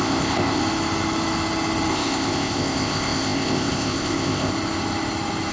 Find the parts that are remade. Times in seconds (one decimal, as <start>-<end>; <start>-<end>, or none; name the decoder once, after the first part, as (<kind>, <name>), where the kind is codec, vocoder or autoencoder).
0.0-0.6 (codec, ZipCodec); 1.9-4.5